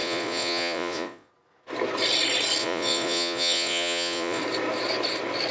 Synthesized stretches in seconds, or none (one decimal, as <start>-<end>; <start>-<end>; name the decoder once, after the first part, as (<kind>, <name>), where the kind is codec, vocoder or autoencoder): 0.0-1.3 (vocoder, Vocos); 2.6-4.4